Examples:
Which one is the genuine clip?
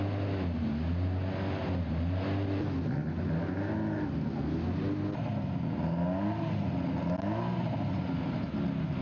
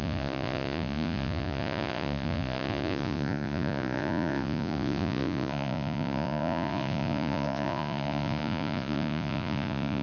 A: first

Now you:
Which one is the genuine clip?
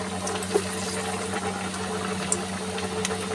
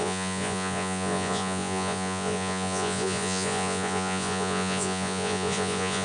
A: first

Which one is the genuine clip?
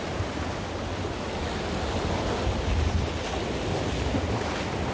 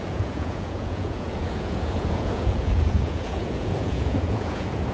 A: first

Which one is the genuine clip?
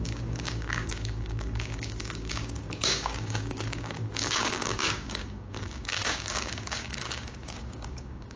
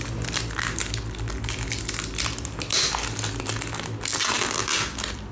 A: second